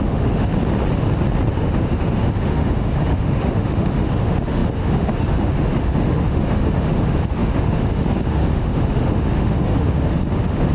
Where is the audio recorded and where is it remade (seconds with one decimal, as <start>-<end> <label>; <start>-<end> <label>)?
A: 0.0-0.5 remade; 0.5-1.5 recorded; 1.5-10.7 remade